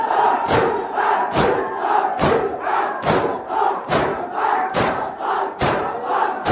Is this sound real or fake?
fake